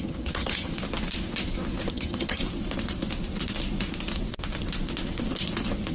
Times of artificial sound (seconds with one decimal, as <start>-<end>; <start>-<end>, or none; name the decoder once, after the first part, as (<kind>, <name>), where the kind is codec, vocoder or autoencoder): 0.0-0.7 (vocoder, HiFi-GAN); 1.9-2.4